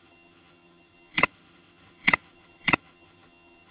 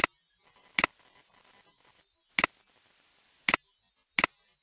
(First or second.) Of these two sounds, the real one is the second